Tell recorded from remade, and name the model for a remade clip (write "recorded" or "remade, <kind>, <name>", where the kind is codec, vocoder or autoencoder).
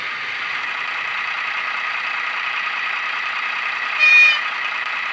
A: remade, vocoder, BigVGAN v2